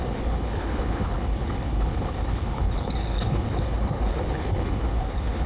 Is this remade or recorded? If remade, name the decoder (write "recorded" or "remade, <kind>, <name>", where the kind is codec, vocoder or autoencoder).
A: remade, codec, HILCodec